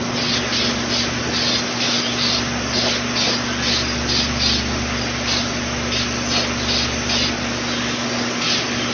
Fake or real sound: real